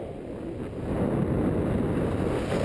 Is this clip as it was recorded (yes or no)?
yes